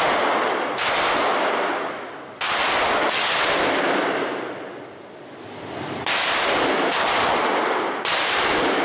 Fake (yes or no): no